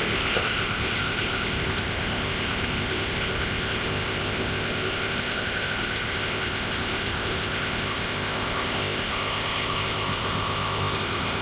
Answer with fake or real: fake